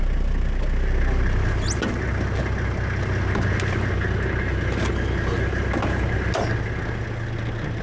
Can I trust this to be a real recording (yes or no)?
yes